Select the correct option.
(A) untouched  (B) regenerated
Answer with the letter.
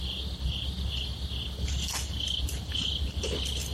A